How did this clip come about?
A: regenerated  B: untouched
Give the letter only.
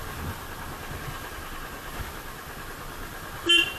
B